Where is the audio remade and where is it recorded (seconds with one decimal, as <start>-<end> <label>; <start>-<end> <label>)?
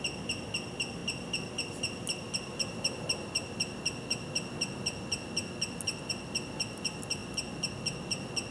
0.0-8.5 recorded